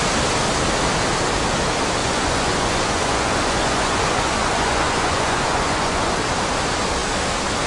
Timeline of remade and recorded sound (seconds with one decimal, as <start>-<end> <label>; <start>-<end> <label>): 0.0-2.0 recorded; 2.0-6.1 remade; 6.1-7.7 recorded